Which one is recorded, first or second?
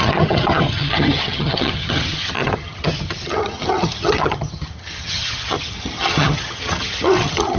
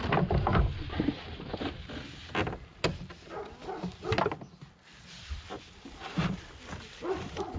second